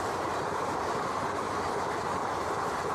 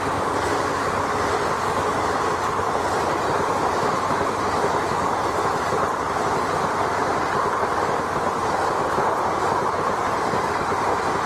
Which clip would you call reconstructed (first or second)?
first